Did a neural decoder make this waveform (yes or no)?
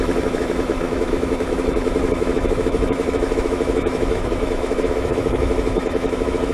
yes